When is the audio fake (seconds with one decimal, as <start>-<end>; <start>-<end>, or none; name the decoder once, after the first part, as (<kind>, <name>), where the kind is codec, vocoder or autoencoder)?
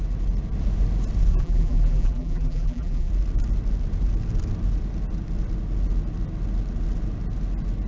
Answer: 1.3-3.1 (vocoder, BigVGAN v2)